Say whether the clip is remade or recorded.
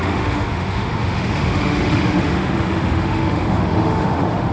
remade